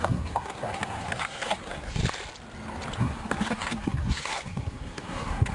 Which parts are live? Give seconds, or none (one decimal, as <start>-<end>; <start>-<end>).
2.0-3.0